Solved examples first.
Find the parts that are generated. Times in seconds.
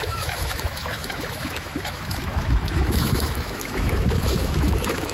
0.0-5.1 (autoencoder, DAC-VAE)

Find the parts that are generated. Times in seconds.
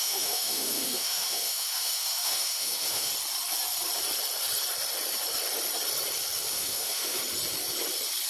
0.0-3.1 (autoencoder, DAC-VAE); 6.5-7.2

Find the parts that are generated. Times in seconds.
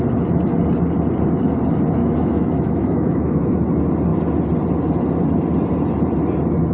2.0-3.4 (autoencoder, DAC-VAE)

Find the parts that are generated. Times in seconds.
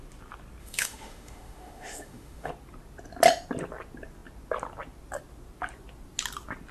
0.6-2.5 (autoencoder, DAC-VAE)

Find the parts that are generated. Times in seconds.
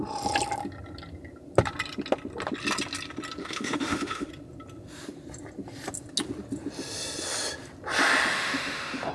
3.4-4.3 (autoencoder, DAC-VAE); 8.3-9.1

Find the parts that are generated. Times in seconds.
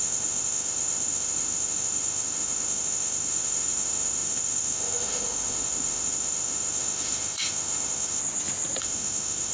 0.0-8.2 (autoencoder, DAC-VAE); 8.8-9.5